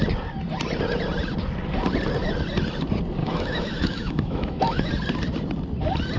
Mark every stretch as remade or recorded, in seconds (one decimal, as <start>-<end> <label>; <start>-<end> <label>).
0.0-3.2 recorded; 3.2-4.9 remade; 4.9-6.2 recorded